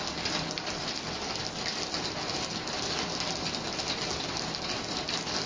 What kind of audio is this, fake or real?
real